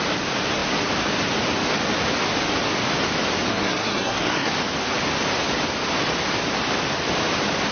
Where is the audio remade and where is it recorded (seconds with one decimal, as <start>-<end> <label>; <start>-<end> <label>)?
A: 0.0-3.5 recorded; 3.5-4.5 remade; 4.5-7.7 recorded